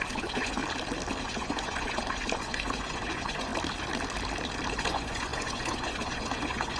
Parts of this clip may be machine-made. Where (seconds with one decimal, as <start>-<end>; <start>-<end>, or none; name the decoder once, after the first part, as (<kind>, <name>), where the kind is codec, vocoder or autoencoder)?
0.0-0.6 (vocoder, Vocos); 1.2-3.5; 4.7-6.8